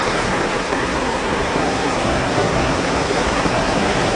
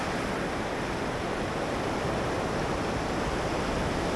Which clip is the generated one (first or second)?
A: first